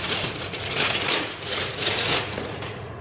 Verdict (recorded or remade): remade